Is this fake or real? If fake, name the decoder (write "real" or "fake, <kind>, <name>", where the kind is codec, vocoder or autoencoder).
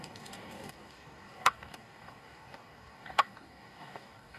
fake, codec, DAC